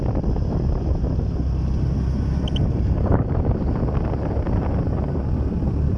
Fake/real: real